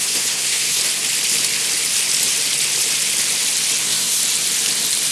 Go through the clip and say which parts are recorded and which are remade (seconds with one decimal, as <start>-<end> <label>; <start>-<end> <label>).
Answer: 0.0-0.8 remade; 0.8-3.8 recorded; 3.8-4.2 remade; 4.2-5.1 recorded